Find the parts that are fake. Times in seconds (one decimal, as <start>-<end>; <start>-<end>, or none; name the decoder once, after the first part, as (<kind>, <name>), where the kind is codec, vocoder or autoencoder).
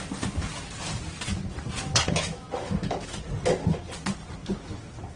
1.9-3.2 (autoencoder, DAC-VAE)